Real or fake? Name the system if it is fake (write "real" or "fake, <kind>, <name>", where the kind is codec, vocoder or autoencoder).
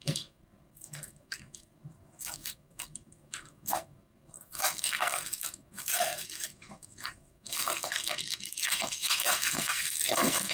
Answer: fake, codec, SNAC